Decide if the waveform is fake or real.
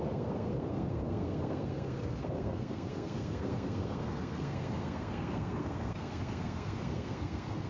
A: fake